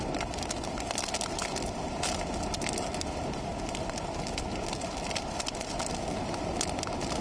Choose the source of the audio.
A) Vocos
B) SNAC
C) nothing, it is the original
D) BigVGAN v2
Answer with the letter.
C